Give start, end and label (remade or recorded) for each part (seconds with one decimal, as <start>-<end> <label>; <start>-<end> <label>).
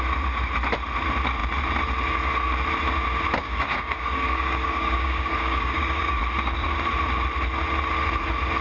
0.0-3.4 recorded; 3.4-6.2 remade; 6.2-8.6 recorded